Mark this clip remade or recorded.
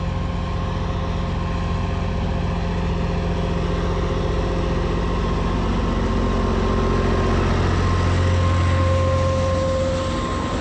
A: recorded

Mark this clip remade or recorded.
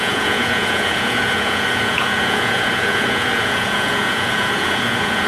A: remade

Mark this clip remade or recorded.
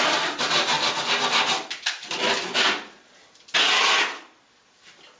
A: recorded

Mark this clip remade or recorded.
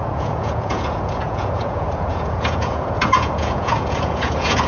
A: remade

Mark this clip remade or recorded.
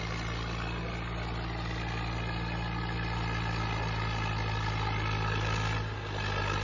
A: recorded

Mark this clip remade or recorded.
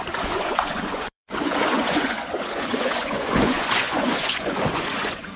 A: remade